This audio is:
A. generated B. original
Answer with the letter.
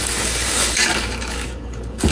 A